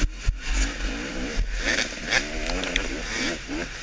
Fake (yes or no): no